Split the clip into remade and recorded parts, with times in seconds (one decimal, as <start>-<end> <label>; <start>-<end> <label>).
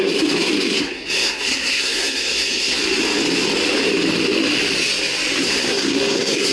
0.0-2.8 remade; 2.8-5.4 recorded; 5.4-6.5 remade